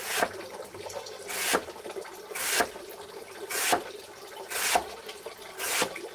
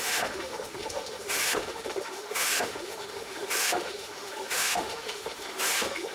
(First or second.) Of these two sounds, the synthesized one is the second